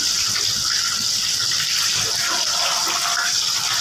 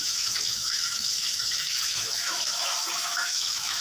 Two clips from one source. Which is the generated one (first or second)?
second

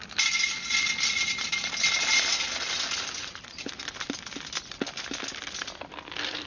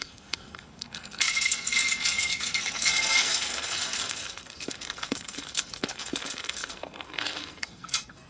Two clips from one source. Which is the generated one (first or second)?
second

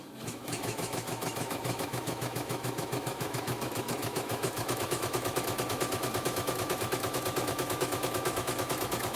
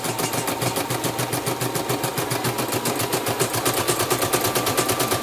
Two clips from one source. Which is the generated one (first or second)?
first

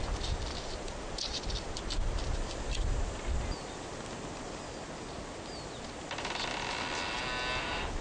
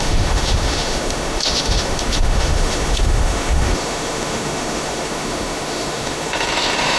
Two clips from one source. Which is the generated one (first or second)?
second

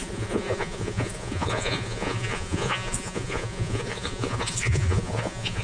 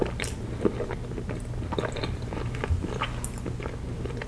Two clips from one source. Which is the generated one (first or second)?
first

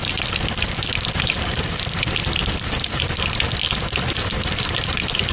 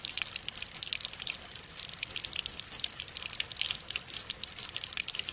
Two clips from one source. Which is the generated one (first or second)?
second